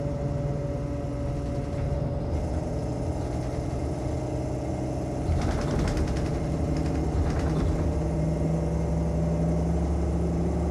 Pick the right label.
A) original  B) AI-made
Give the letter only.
A